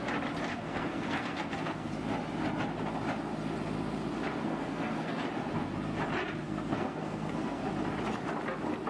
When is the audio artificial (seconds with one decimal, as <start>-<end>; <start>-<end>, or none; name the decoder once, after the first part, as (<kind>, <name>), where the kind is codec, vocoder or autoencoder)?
0.5-1.9 (codec, SNAC); 4.4-5.2; 6.4-7.6